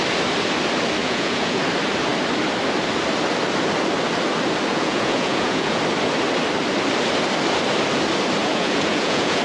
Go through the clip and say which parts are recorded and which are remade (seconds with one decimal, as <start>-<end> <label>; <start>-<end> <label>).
0.0-1.0 recorded; 1.0-1.6 remade; 1.6-4.7 recorded; 4.7-5.8 remade; 5.8-8.4 recorded; 8.4-9.4 remade